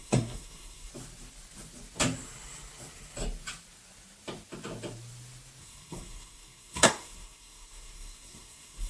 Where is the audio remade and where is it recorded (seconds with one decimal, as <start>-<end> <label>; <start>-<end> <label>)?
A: 0.0-0.9 remade; 0.9-5.6 recorded; 5.6-8.9 remade